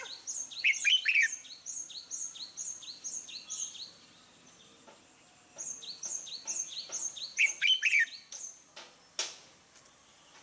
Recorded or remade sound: recorded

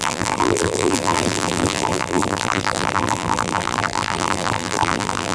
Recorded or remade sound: remade